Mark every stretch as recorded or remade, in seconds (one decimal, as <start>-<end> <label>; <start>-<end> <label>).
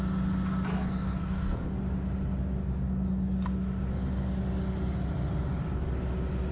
0.0-0.7 recorded; 0.7-1.8 remade; 1.8-6.5 recorded